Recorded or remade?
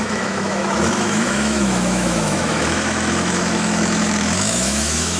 remade